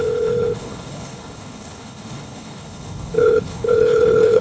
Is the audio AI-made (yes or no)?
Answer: yes